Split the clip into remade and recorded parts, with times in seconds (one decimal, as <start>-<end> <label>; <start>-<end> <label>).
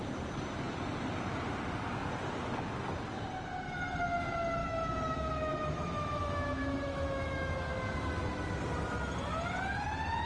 0.0-4.6 recorded; 4.6-7.7 remade; 7.7-10.3 recorded